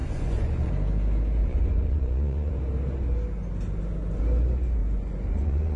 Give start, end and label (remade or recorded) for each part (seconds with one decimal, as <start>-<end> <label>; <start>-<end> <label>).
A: 0.0-0.7 remade; 0.7-1.4 recorded; 1.4-2.5 remade; 2.5-4.8 recorded; 4.8-5.8 remade